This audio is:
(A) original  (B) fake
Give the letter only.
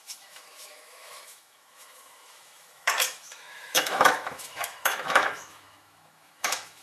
B